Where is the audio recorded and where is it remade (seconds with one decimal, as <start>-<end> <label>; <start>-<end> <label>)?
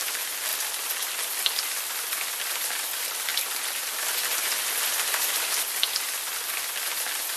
0.0-0.5 remade; 0.5-1.2 recorded; 1.2-3.3 remade; 3.3-6.5 recorded; 6.5-7.4 remade